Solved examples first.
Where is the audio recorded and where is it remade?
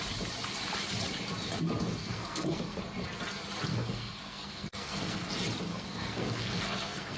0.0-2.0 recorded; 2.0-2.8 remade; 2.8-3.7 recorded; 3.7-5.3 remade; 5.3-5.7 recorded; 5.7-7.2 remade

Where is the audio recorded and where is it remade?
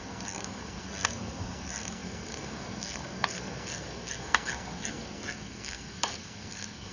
0.0-6.9 remade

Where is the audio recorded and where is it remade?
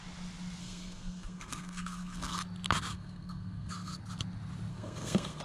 0.0-0.6 recorded; 0.6-2.4 remade; 2.4-2.9 recorded; 2.9-4.0 remade; 4.0-4.7 recorded; 4.7-5.4 remade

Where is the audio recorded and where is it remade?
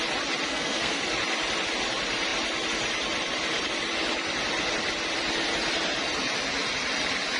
0.0-0.5 recorded; 0.5-1.0 remade; 1.0-7.4 recorded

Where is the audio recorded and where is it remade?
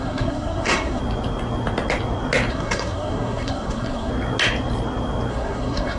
0.0-1.0 remade; 1.0-2.5 recorded; 2.5-4.1 remade; 4.1-5.3 recorded; 5.3-6.0 remade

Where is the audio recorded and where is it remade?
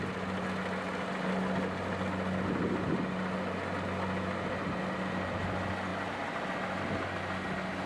0.0-7.9 recorded